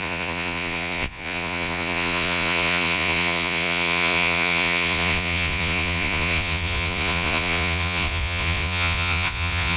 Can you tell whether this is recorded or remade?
remade